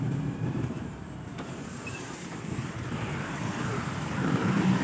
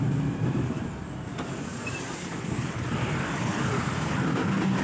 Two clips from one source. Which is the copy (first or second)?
first